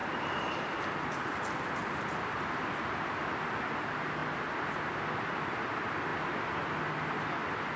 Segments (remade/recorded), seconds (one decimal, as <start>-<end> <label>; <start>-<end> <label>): 0.0-7.8 recorded